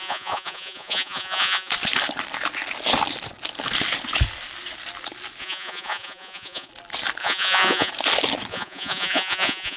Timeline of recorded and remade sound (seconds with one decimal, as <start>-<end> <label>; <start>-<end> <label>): 0.0-1.7 remade; 1.7-5.4 recorded; 5.4-6.7 remade; 6.7-7.2 recorded; 7.2-7.9 remade; 7.9-8.5 recorded; 8.5-9.8 remade